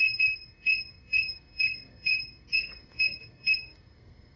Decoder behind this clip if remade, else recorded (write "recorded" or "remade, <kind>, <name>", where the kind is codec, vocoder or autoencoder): remade, codec, SNAC